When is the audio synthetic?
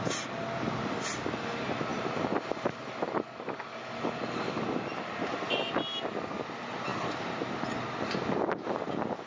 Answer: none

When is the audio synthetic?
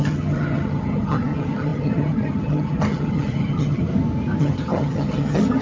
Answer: 0.0-3.9 (vocoder, HiFi-GAN); 4.4-5.6